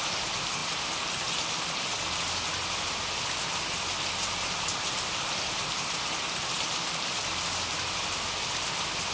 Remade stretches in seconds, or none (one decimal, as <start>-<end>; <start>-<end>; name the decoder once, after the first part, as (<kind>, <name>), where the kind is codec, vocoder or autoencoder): none